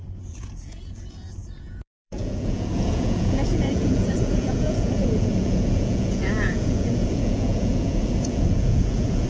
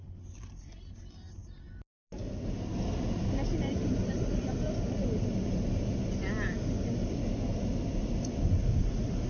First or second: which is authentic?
second